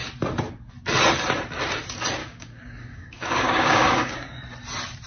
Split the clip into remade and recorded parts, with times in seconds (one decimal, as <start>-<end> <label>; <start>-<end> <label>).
0.0-2.2 recorded; 2.2-4.4 remade; 4.4-5.1 recorded